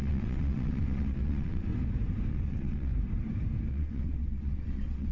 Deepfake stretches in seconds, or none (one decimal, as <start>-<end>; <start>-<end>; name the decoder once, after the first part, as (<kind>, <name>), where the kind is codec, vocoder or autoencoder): 0.0-1.7 (vocoder, WaveNeXt); 2.3-2.9; 3.7-5.1